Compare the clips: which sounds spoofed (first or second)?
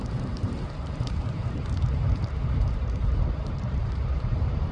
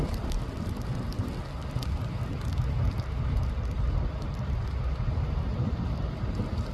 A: first